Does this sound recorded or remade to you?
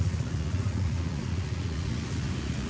remade